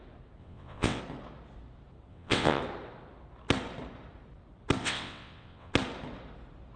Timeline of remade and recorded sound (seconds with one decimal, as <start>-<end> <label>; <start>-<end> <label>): 0.0-0.4 recorded; 0.4-1.0 remade; 1.0-2.1 recorded; 2.1-2.6 remade; 2.6-4.8 recorded; 4.8-5.7 remade; 5.7-6.8 recorded